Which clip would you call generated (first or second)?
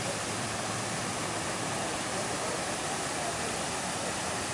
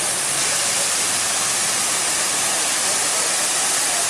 second